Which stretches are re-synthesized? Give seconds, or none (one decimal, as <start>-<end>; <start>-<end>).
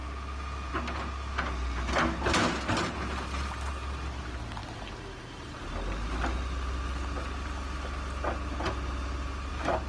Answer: none